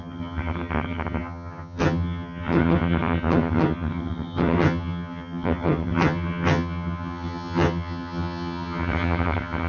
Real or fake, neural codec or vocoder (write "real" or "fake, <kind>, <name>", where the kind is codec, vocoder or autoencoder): fake, vocoder, HiFi-GAN